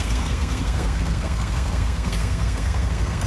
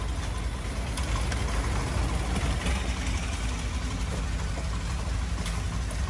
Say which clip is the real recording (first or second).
second